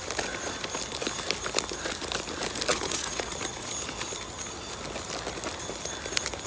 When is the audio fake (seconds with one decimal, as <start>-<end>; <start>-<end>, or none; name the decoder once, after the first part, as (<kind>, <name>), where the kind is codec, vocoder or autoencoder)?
2.7-3.7 (vocoder, Vocos)